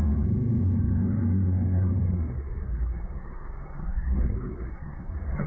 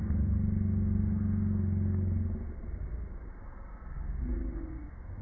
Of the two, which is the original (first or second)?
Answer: second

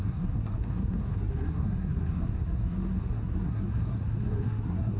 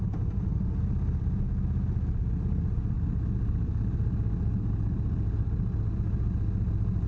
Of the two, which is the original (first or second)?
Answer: second